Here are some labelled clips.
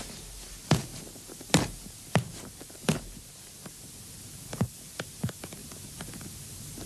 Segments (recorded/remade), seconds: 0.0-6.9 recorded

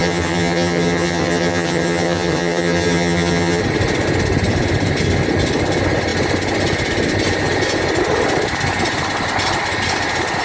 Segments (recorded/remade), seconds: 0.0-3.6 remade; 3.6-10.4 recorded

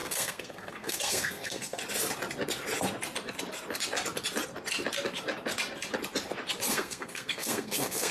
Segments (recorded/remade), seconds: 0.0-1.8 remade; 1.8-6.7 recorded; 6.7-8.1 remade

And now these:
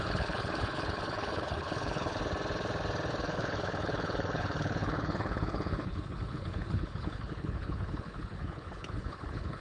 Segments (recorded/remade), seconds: 0.0-2.2 remade; 2.2-3.2 recorded; 3.2-9.6 remade